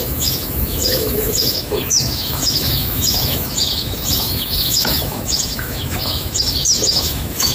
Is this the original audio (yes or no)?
no